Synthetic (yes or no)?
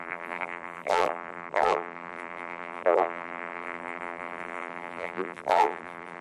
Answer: yes